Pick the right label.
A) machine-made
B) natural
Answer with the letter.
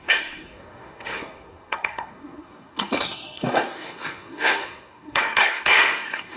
A